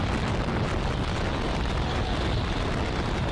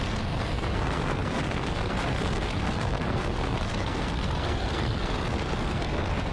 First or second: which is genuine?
first